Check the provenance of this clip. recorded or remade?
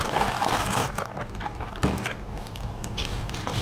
remade